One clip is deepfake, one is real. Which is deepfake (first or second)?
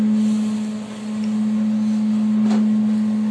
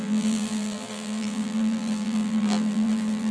second